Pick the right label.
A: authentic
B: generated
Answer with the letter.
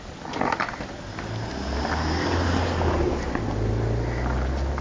A